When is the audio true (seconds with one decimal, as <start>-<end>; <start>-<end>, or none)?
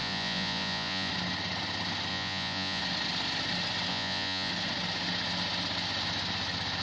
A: 1.1-2.1; 2.8-3.9; 4.5-6.8